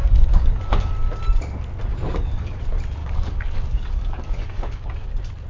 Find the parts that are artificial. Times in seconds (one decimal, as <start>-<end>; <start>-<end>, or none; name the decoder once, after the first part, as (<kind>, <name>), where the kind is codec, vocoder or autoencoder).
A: 0.0-0.9 (codec, DAC); 1.9-2.6; 3.0-5.1